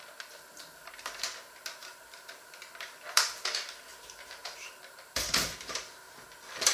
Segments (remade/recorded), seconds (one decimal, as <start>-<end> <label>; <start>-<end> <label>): 0.0-1.8 recorded; 1.8-2.3 remade; 2.3-3.9 recorded; 3.9-5.6 remade; 5.6-6.7 recorded